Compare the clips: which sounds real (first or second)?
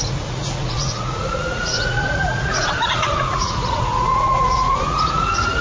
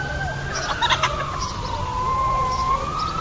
second